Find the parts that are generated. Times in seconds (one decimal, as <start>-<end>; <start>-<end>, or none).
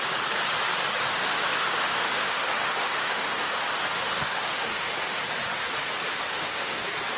1.1-4.9; 6.3-6.8